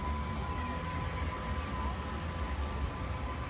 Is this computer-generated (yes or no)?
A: no